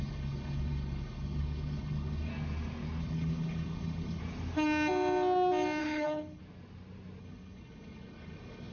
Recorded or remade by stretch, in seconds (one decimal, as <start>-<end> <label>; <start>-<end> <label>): 0.0-2.3 remade; 2.3-3.0 recorded; 3.0-4.2 remade; 4.2-5.8 recorded; 5.8-6.4 remade; 6.4-7.2 recorded; 7.2-8.7 remade